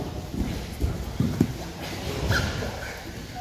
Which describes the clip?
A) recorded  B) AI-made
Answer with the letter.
A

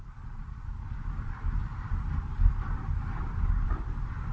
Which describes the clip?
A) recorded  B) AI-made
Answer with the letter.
A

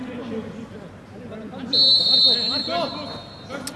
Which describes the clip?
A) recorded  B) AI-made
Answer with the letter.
A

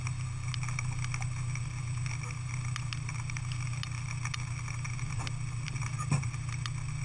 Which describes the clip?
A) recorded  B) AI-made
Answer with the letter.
A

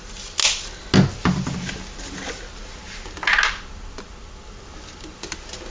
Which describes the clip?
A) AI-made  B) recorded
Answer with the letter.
B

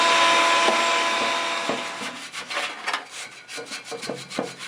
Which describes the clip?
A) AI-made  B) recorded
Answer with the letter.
B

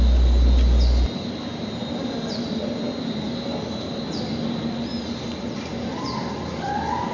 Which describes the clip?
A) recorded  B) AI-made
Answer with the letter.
A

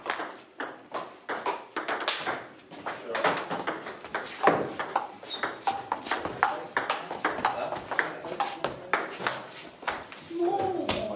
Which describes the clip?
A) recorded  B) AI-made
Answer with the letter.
A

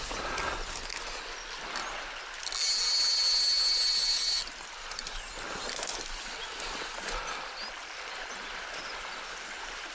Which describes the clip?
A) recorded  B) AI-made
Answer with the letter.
A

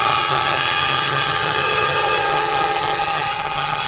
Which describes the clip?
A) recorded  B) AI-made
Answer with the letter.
B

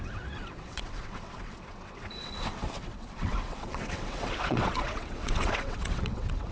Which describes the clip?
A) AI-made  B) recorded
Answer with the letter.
A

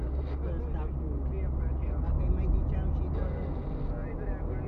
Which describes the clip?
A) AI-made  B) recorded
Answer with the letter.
B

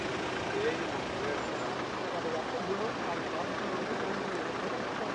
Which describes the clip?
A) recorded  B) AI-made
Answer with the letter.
A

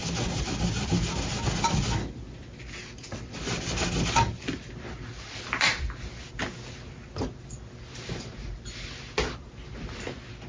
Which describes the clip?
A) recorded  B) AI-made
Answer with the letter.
A